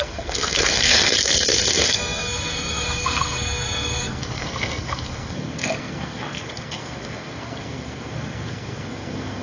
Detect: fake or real fake